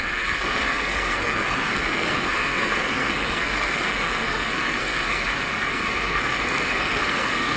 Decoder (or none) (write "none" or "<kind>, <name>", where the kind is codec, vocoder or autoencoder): codec, SNAC